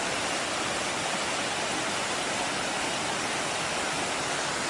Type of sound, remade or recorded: recorded